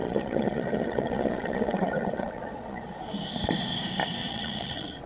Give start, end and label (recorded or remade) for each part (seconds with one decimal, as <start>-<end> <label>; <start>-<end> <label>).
0.0-3.1 remade; 3.1-4.2 recorded; 4.2-5.1 remade